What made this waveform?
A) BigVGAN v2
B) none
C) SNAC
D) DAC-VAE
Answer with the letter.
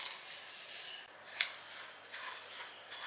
B